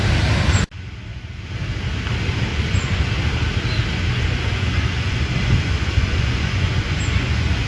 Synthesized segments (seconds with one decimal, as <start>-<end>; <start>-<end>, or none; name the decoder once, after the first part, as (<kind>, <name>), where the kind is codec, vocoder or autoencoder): 2.5-3.1 (vocoder, Vocos); 3.9-7.7